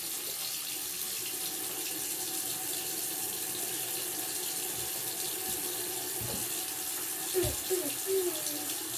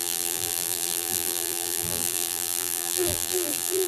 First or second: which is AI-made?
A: second